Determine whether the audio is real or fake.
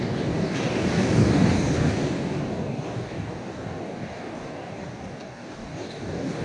fake